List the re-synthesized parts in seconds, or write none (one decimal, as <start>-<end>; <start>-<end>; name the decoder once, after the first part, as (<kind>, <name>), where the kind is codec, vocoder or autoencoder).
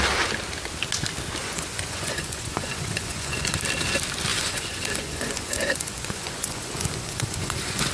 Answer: 1.4-3.5 (vocoder, Vocos); 4.3-7.9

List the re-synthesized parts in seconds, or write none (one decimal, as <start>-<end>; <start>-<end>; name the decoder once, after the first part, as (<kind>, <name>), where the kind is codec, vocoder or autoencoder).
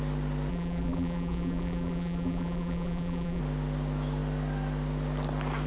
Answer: 0.5-3.4 (vocoder, BigVGAN v2)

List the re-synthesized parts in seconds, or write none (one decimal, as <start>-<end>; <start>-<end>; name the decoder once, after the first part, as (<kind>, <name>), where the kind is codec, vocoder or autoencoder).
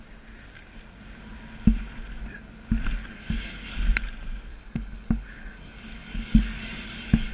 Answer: 3.0-3.7 (codec, DAC); 4.5-7.3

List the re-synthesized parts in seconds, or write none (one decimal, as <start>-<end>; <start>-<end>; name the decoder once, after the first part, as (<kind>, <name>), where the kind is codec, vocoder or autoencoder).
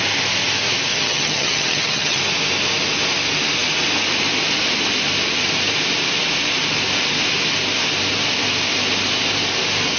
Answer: 0.9-2.2 (vocoder, HiFi-GAN)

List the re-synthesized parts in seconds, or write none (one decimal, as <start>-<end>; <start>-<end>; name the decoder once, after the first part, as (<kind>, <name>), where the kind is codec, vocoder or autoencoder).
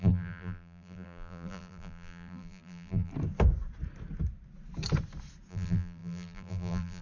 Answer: 0.0-3.1 (vocoder, BigVGAN v2); 5.5-7.0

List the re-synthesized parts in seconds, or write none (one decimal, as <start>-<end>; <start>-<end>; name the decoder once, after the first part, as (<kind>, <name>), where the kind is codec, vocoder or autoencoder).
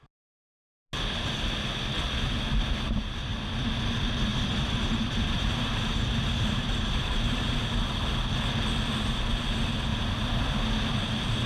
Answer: 4.3-7.6 (vocoder, BigVGAN v2)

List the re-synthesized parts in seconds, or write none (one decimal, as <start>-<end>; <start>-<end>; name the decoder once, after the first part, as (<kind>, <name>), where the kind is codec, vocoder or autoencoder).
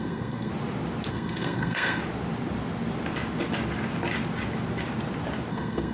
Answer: 0.0-0.5 (codec, SNAC); 1.1-2.0; 5.5-5.9